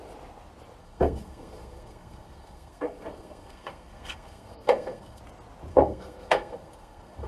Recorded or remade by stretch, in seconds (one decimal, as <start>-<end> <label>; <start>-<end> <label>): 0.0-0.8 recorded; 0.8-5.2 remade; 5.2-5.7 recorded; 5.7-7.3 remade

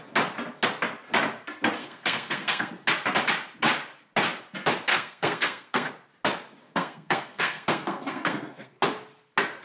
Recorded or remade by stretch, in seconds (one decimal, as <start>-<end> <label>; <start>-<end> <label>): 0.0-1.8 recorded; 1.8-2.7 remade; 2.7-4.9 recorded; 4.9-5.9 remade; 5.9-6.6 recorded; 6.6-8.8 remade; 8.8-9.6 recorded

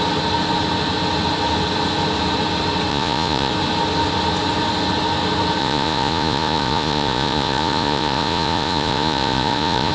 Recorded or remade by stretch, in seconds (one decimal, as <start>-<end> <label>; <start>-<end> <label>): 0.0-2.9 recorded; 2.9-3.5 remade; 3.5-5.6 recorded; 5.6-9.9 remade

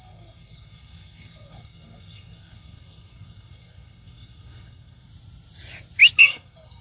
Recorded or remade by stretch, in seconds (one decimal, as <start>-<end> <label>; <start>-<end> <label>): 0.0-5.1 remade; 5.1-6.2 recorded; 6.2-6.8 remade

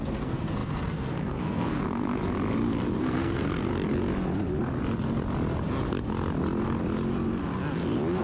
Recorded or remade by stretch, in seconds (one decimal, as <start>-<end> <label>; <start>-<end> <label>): 0.0-2.2 remade; 2.2-3.0 recorded; 3.0-3.7 remade; 3.7-8.2 recorded